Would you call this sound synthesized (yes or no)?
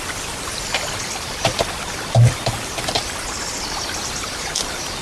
yes